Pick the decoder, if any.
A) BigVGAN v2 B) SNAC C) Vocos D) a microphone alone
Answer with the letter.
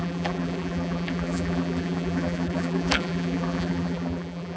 A